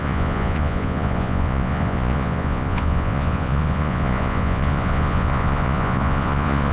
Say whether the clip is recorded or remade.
remade